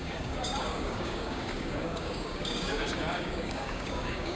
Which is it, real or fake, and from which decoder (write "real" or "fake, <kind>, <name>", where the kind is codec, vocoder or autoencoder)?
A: fake, codec, DAC